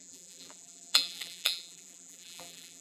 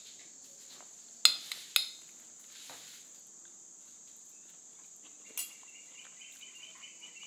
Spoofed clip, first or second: first